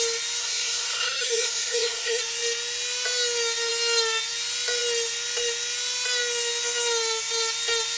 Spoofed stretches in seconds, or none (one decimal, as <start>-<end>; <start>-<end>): 0.4-2.2